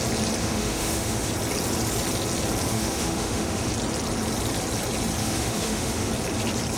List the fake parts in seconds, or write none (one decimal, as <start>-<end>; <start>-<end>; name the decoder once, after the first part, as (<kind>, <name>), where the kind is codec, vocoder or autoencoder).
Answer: 0.4-1.3 (autoencoder, DAC-VAE); 2.7-3.7; 5.2-6.1

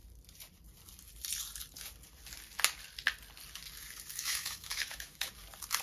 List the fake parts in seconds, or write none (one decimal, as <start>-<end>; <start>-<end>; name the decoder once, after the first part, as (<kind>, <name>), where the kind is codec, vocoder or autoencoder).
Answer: 4.1-5.3 (autoencoder, DAC-VAE)

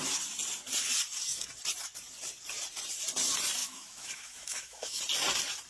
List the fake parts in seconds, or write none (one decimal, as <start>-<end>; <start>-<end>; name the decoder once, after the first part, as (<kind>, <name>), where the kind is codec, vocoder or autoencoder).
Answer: 3.6-5.0 (autoencoder, DAC-VAE)

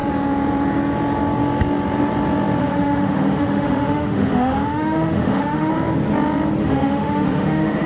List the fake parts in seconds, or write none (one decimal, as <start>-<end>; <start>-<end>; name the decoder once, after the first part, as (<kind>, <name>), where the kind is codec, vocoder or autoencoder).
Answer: 2.6-5.7 (autoencoder, DAC-VAE); 6.6-7.9

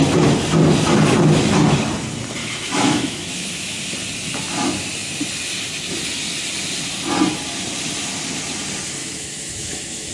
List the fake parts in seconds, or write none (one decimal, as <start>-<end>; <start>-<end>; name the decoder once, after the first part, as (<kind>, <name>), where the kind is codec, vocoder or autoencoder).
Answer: 2.4-3.8 (autoencoder, DAC-VAE); 9.0-10.1

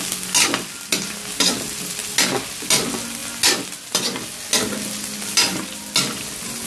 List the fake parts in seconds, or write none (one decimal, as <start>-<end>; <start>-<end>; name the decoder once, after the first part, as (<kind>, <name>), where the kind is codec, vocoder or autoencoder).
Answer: none

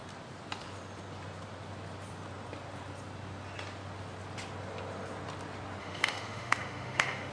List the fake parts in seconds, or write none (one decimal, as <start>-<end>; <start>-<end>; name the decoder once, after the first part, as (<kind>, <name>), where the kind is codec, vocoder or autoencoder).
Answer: 5.8-7.3 (autoencoder, DAC-VAE)